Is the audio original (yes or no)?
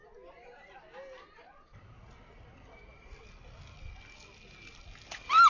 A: yes